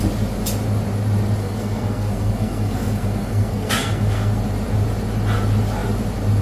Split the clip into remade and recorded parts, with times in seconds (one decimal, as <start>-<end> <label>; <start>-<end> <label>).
0.0-1.4 recorded; 1.4-4.4 remade; 4.4-6.4 recorded